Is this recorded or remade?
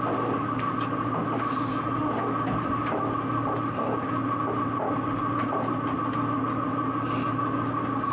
recorded